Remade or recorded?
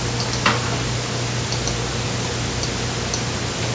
recorded